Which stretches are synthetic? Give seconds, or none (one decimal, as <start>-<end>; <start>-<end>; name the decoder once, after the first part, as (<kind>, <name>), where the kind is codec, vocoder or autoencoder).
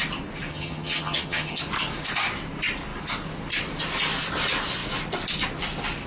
0.5-1.6 (vocoder, HiFi-GAN)